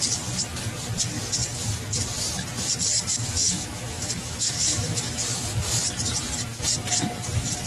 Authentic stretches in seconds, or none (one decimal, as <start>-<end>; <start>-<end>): 0.0-3.2; 5.7-7.7